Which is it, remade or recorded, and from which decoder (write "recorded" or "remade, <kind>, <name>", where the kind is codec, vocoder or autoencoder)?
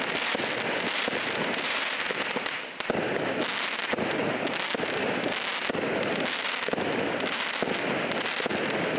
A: recorded